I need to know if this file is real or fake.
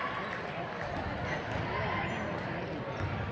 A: real